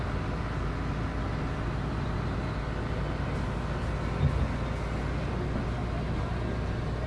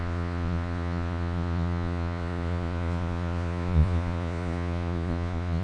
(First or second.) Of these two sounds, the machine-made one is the second